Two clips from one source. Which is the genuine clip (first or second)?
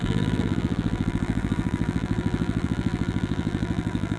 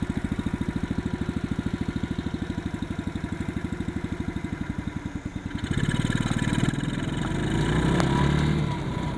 second